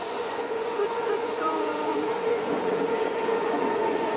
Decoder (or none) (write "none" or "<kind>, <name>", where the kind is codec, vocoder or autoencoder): vocoder, Vocos